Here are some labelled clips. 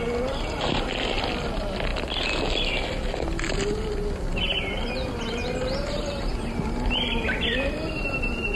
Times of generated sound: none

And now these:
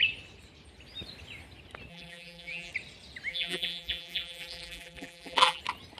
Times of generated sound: 1.9-2.7 (vocoder, BigVGAN v2); 3.3-5.6